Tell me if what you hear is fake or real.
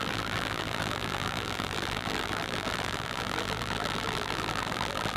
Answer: fake